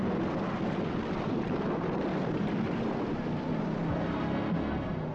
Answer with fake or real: real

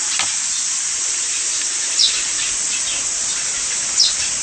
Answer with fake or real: real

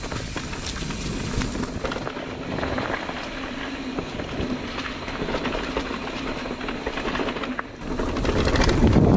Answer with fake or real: real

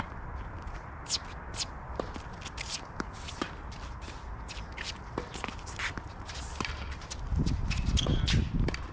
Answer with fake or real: fake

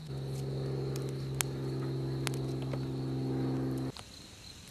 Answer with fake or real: real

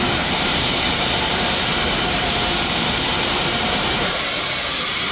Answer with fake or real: fake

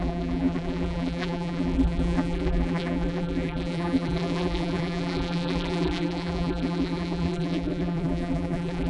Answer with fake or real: fake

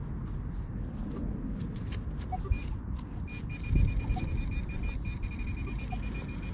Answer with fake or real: real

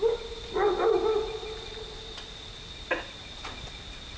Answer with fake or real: real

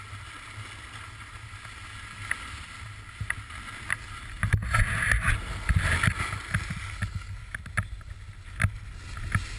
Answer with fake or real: real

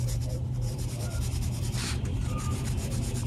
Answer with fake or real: fake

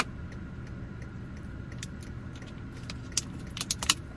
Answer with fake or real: real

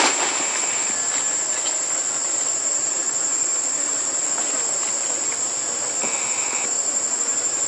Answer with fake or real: real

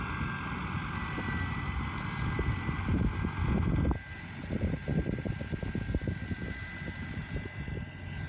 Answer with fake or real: real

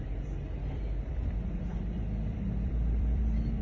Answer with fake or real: fake